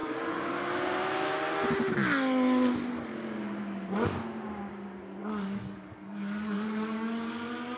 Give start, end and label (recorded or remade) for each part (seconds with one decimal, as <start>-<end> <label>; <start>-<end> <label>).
0.0-0.5 remade; 0.5-5.2 recorded; 5.2-7.2 remade; 7.2-7.8 recorded